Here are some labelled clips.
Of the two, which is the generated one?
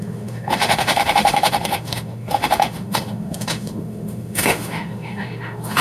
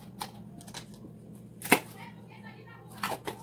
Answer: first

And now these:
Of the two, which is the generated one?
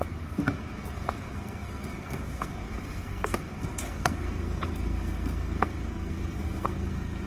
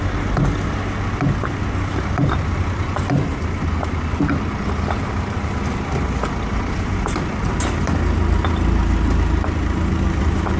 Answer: first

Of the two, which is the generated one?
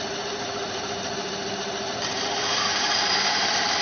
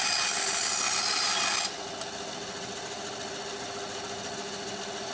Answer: first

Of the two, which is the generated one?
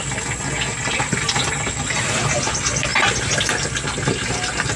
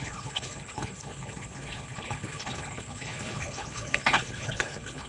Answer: second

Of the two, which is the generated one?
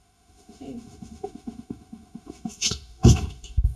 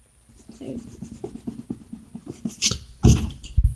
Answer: first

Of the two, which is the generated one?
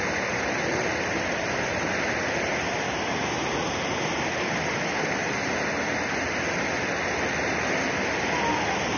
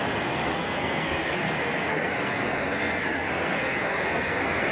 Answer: second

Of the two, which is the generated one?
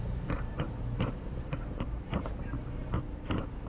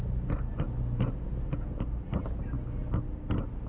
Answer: first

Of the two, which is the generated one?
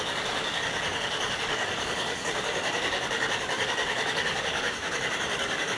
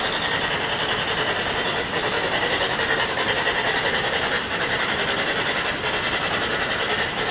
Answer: first